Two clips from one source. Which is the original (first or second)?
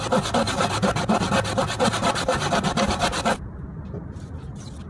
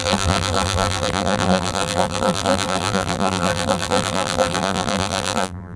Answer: first